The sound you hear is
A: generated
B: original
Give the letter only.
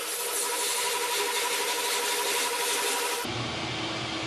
B